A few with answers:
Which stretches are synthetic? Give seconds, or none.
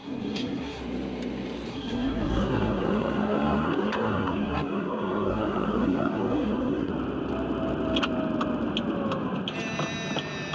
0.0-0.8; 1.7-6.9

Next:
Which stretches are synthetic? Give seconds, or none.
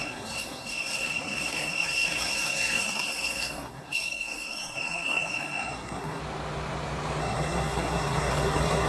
0.0-6.2; 7.2-8.9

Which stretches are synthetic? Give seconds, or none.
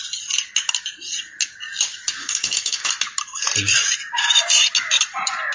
2.2-2.9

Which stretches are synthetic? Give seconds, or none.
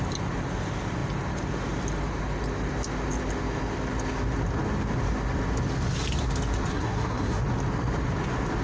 6.7-7.4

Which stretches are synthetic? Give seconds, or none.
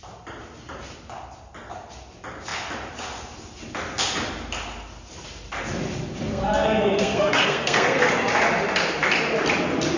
6.3-8.1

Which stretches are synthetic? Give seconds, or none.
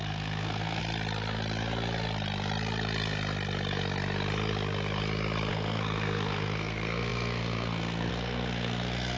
0.0-0.8; 5.5-9.2